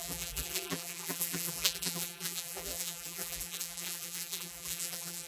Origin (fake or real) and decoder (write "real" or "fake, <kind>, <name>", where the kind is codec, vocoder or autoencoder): fake, vocoder, BigVGAN v2